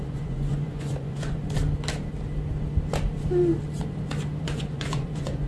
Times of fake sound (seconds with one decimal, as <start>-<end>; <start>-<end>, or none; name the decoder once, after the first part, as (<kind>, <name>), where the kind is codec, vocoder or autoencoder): 0.0-1.4 (vocoder, Vocos); 4.4-5.5